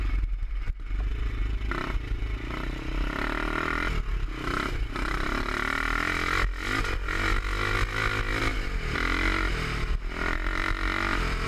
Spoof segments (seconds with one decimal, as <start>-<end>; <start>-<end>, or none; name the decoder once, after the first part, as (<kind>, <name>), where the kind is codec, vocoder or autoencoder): none